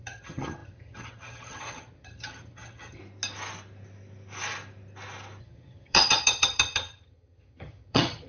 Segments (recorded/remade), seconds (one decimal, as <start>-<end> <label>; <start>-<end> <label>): 0.0-3.0 remade; 3.0-5.4 recorded; 5.4-8.3 remade